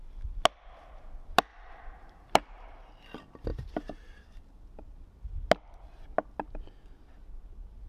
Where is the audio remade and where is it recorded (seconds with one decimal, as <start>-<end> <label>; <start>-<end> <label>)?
0.0-1.5 recorded; 1.5-2.9 remade; 2.9-3.5 recorded; 3.5-4.1 remade; 4.1-7.9 recorded